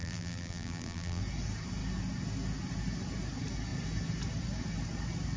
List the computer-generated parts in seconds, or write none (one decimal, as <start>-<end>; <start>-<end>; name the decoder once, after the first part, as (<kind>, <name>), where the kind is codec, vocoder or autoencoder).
0.0-1.2 (vocoder, BigVGAN v2)